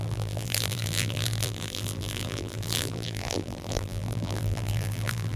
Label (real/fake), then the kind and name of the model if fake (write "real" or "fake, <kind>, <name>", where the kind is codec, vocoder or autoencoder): fake, vocoder, BigVGAN v2